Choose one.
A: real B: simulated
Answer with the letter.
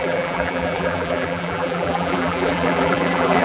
B